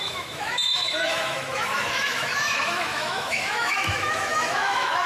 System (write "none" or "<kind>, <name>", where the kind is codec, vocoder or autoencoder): autoencoder, DAC-VAE